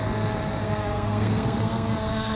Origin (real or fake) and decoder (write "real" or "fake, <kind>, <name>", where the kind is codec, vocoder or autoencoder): fake, codec, SNAC